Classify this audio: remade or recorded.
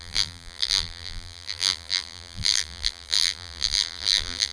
remade